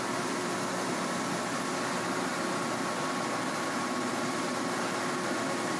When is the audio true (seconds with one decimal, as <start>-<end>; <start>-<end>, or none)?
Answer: 0.0-5.8